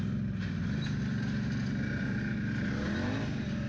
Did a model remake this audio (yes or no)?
no